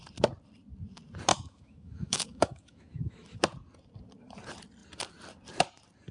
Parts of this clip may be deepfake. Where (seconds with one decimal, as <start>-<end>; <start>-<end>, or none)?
1.3-3.4